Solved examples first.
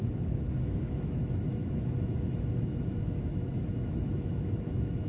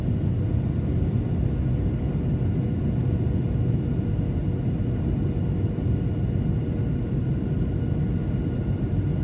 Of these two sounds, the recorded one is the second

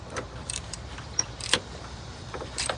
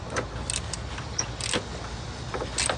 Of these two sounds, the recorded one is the second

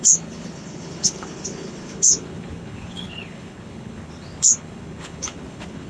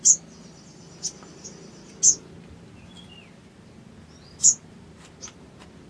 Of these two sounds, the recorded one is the second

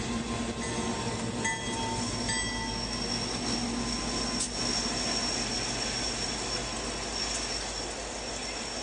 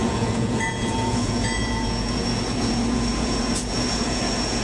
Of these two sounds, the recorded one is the first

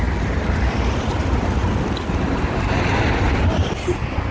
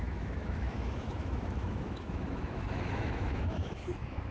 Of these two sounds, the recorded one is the first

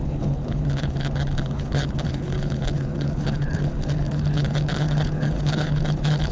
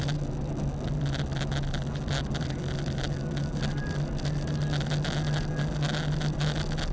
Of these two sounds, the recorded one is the second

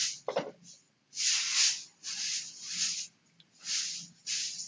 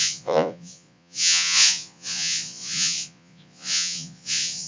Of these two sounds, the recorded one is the first